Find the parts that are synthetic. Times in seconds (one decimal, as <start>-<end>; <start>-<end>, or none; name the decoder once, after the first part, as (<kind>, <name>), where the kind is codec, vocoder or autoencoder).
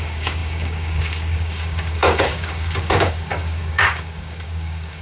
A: 0.0-5.0 (codec, DAC)